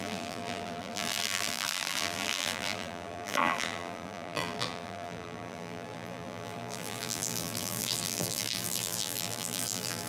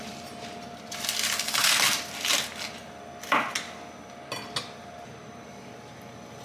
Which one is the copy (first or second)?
first